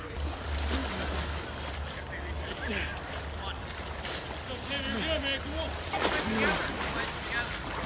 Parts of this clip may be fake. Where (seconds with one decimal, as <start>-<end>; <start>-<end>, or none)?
none